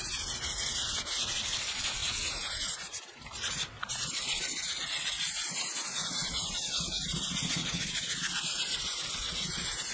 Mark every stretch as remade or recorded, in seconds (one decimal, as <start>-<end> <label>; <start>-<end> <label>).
0.0-4.5 remade; 4.5-5.3 recorded; 5.3-9.9 remade